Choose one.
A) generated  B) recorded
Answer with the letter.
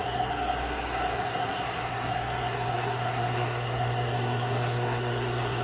A